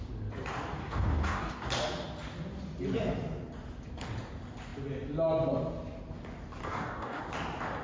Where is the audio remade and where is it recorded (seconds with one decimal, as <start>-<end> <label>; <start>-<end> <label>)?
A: 0.0-0.8 recorded; 0.8-1.5 remade; 1.5-6.6 recorded; 6.6-7.2 remade; 7.2-7.8 recorded